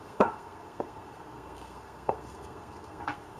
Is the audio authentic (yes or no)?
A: no